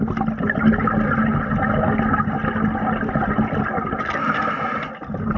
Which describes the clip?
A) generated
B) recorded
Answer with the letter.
B